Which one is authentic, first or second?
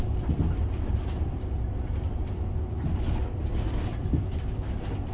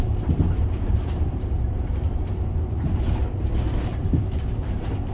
first